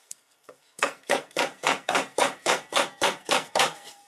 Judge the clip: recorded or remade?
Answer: remade